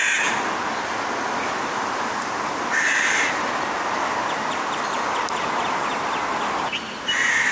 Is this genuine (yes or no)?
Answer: yes